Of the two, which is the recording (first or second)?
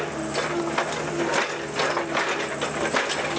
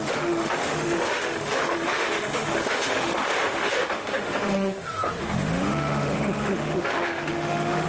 first